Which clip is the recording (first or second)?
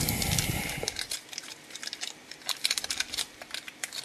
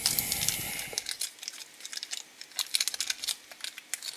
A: second